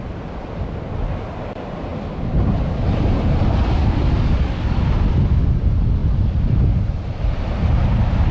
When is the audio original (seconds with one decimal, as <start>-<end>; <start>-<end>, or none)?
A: 0.0-3.8; 4.8-8.3